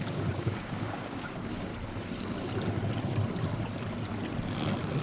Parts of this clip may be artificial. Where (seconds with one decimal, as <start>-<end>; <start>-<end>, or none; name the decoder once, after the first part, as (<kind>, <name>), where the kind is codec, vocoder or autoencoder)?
0.0-1.7 (codec, DAC)

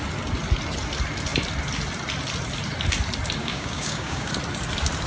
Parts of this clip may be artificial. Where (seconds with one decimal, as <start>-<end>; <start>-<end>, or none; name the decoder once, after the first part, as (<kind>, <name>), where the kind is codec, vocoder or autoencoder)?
3.4-4.3 (codec, DAC)

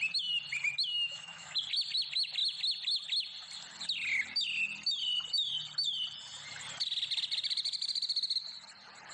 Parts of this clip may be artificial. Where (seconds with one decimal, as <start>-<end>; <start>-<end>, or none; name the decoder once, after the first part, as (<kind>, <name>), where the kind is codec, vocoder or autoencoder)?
0.9-1.6 (autoencoder, DAC-VAE)

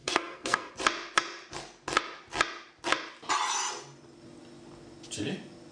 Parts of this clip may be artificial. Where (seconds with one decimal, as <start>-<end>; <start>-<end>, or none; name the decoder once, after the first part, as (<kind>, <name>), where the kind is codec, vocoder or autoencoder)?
0.0-0.7 (codec, SNAC)